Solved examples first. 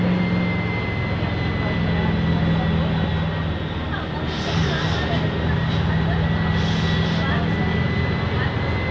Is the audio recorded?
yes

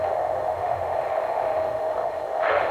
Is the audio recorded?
no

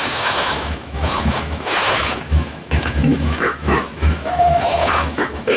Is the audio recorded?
no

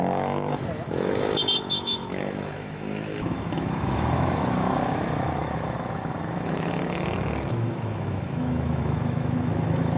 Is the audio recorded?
no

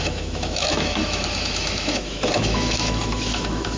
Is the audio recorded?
no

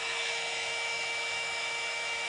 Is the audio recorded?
no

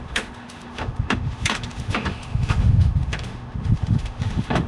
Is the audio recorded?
no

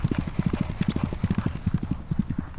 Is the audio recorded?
yes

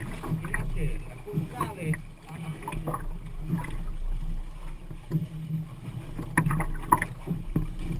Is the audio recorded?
yes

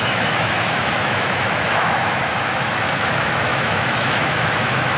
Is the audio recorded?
no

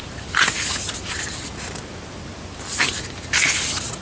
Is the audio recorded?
yes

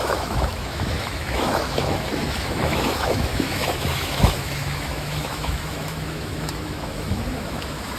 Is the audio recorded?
no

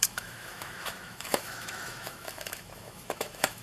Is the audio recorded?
no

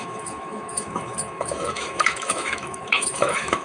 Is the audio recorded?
no